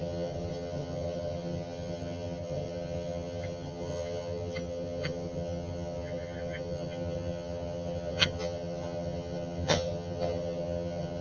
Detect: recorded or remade remade